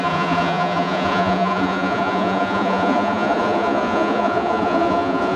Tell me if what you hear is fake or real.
fake